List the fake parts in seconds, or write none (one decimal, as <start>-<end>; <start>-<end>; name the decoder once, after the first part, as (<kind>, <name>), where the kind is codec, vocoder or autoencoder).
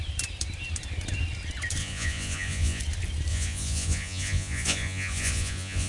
1.8-2.8 (vocoder, Vocos); 3.3-5.9